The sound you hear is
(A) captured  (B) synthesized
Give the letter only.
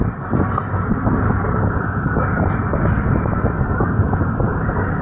A